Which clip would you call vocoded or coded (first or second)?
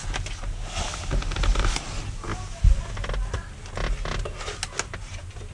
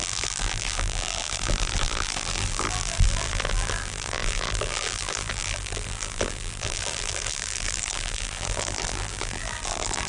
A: second